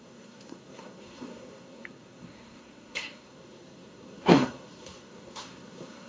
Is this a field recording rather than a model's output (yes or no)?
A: no